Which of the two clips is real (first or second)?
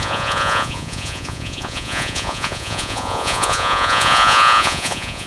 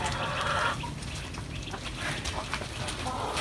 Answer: second